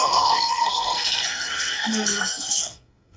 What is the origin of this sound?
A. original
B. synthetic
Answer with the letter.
B